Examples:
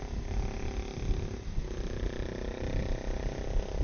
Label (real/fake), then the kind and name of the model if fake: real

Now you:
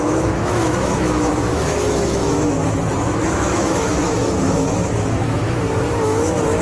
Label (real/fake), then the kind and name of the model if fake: fake, autoencoder, DAC-VAE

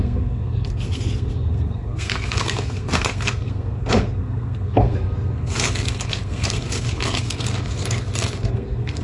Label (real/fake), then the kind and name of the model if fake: fake, codec, SNAC